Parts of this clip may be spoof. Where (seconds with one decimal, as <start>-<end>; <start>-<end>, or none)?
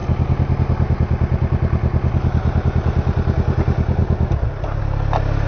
none